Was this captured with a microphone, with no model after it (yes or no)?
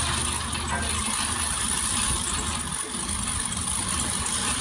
yes